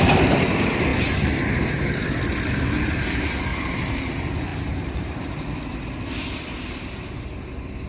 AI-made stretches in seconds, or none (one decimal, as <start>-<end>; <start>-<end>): 3.5-4.1; 4.5-5.2